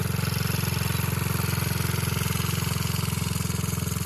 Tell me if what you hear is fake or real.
real